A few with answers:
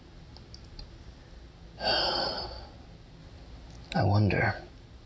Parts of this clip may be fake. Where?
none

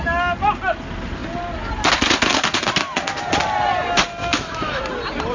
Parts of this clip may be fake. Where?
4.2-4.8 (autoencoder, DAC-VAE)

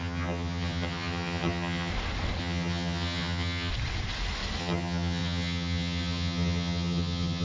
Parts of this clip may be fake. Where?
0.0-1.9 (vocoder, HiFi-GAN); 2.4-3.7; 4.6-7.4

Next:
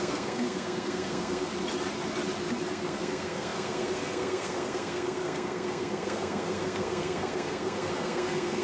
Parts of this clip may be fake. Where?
0.0-1.5 (codec, SNAC); 2.7-8.6

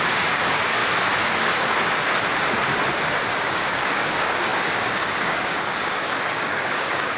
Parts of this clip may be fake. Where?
0.0-0.8 (codec, DAC); 3.3-7.2

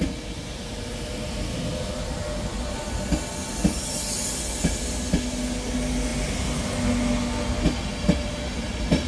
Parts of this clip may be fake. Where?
none

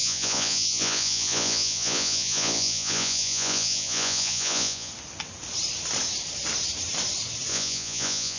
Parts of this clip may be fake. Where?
0.0-4.9 (vocoder, Vocos); 7.5-8.4

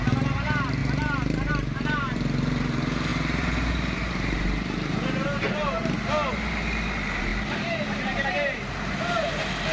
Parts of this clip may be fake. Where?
0.0-5.8 (vocoder, BigVGAN v2); 6.3-9.7